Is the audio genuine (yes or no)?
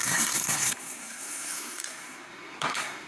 no